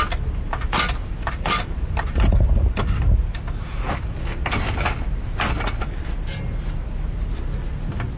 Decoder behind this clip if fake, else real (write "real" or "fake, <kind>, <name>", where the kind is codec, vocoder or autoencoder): real